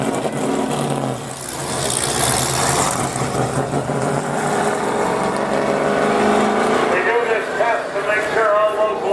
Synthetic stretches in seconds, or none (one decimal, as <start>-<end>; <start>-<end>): none